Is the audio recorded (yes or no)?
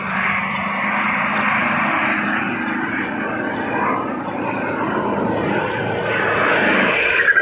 yes